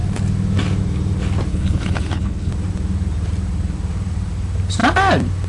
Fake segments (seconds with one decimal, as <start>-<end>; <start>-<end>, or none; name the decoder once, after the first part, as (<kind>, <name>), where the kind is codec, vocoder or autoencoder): 1.5-2.5 (codec, HILCodec)